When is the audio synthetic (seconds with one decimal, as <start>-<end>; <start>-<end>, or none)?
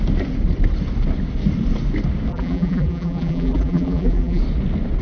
2.3-4.4